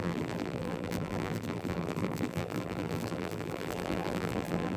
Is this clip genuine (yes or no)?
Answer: no